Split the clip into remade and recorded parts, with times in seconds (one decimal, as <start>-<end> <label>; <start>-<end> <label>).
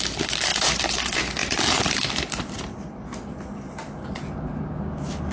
0.0-5.3 recorded